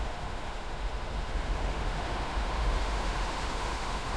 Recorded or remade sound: remade